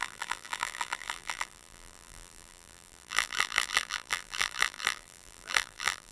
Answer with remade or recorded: remade